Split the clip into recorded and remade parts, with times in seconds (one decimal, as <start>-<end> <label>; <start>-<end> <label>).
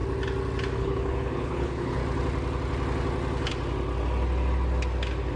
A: 0.0-0.7 recorded; 0.7-2.0 remade; 2.0-5.4 recorded